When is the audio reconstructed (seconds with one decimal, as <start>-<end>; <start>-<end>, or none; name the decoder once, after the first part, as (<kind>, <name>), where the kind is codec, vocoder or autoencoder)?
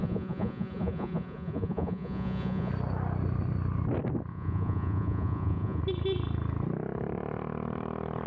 0.0-2.7 (vocoder, Vocos); 4.3-5.8